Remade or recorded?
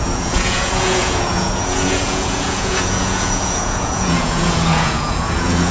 remade